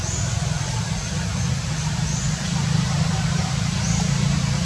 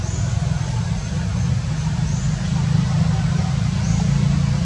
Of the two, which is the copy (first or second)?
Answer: first